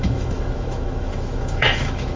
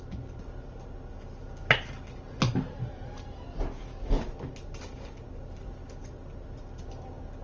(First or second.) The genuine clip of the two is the second